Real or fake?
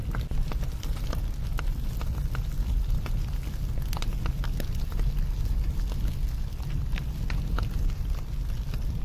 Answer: real